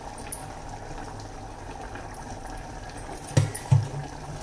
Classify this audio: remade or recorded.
recorded